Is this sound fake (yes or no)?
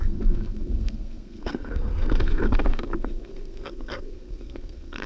yes